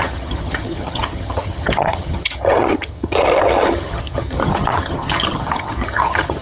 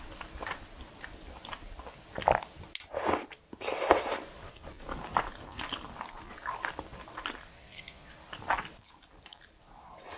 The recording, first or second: second